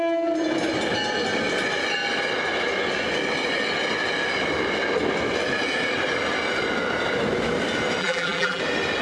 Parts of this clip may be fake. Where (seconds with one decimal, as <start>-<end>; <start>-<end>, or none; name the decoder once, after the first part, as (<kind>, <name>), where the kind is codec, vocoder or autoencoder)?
8.0-8.6 (vocoder, BigVGAN v2)